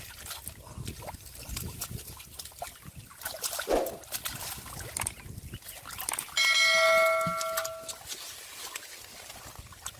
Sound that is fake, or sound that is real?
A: real